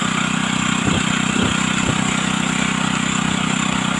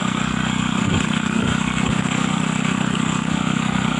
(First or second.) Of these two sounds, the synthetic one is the second